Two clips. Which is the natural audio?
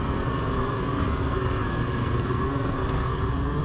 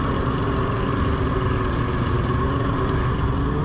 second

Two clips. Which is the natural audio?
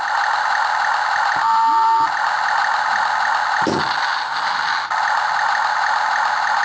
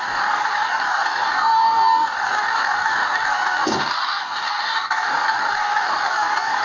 first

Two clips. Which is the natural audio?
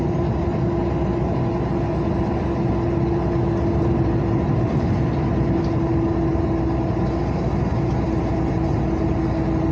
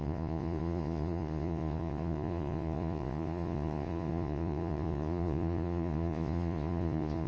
first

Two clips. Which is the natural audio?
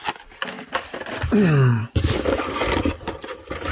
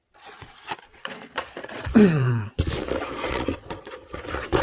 first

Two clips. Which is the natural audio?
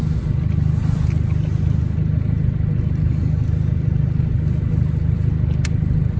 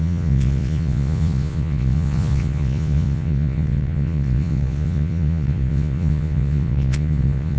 first